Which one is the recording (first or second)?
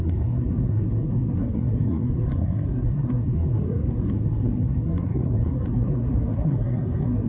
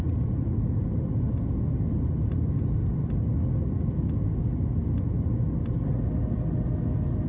second